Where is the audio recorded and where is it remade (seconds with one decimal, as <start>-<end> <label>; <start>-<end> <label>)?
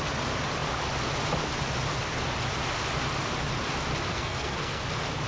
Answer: 0.0-4.1 recorded; 4.1-4.8 remade; 4.8-5.3 recorded